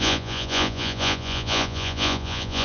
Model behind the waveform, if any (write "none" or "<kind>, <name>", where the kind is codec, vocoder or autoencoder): vocoder, Vocos